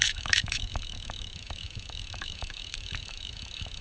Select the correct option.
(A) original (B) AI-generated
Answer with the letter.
B